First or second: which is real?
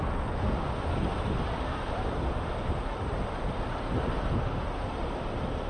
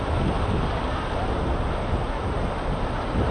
second